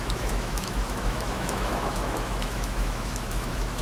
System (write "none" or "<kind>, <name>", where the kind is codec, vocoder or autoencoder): autoencoder, DAC-VAE